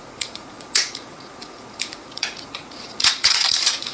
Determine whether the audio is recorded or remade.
remade